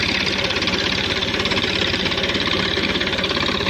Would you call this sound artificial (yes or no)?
yes